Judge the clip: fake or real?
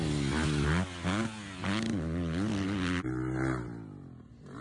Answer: real